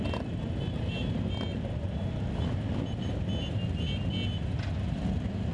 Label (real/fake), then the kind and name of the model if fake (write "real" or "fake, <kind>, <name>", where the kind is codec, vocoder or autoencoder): real